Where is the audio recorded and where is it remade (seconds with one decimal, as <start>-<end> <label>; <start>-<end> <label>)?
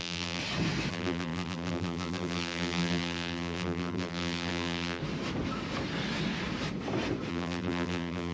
0.0-0.4 remade; 0.4-0.9 recorded; 0.9-5.0 remade; 5.0-7.3 recorded; 7.3-8.3 remade